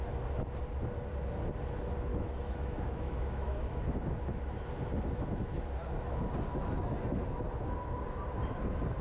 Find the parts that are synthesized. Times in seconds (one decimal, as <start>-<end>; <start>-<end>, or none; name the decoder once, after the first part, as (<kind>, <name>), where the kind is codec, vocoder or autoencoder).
2.1-3.8 (autoencoder, DAC-VAE)